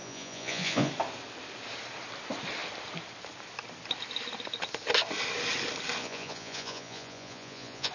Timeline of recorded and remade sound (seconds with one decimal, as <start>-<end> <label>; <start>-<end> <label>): 0.0-0.9 remade; 0.9-6.0 recorded; 6.0-7.9 remade